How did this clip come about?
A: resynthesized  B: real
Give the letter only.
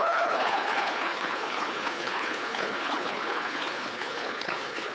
A